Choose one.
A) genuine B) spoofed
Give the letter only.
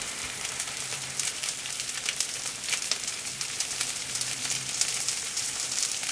B